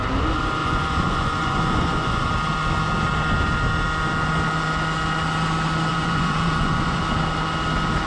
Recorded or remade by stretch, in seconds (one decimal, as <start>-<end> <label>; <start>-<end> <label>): 0.0-0.6 recorded; 0.6-2.3 remade; 2.3-5.9 recorded; 5.9-7.0 remade; 7.0-8.1 recorded